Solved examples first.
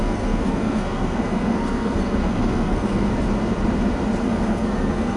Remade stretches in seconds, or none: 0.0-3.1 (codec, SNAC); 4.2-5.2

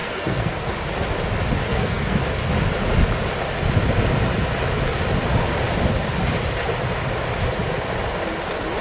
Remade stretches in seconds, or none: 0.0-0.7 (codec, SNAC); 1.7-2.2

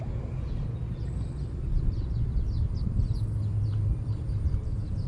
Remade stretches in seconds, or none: none

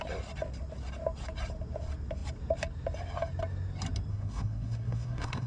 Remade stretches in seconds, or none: 4.1-5.5 (codec, SNAC)

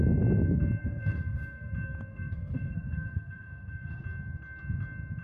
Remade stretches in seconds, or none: 0.8-1.7 (codec, SNAC); 2.1-4.0

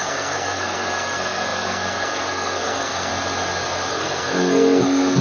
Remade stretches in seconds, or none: 0.0-3.1 (codec, SNAC); 3.9-5.2